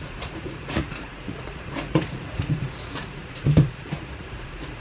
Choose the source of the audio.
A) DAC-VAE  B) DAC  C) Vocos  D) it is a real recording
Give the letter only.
C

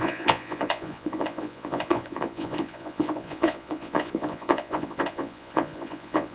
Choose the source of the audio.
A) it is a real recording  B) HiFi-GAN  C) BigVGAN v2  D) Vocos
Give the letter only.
D